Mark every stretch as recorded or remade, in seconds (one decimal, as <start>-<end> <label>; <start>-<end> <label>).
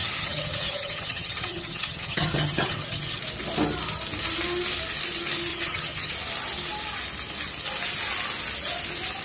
0.0-3.2 remade; 3.2-5.5 recorded; 5.5-6.1 remade; 6.1-9.2 recorded